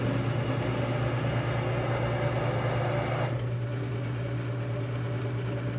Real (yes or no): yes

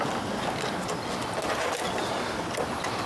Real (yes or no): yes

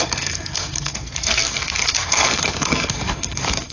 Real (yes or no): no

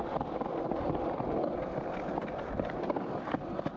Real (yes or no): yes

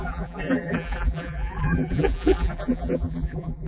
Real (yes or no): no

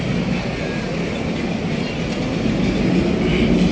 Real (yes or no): yes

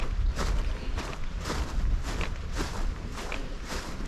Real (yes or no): yes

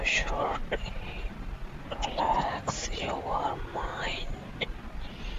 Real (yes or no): yes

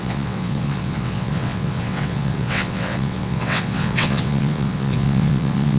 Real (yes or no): no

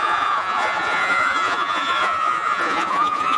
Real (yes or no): no